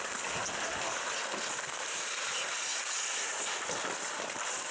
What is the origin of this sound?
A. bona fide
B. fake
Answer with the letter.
A